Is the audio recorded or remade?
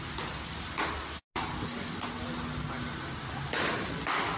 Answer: recorded